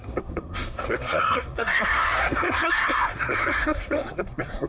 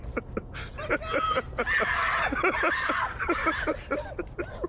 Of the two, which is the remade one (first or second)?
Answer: first